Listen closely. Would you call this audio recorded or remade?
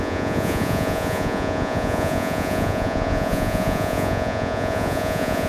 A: remade